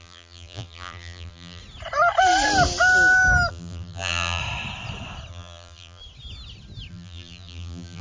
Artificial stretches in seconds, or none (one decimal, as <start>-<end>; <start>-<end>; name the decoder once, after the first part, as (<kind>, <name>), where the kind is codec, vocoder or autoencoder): 0.0-1.6 (vocoder, BigVGAN v2); 3.5-4.4; 5.3-6.0; 6.9-8.0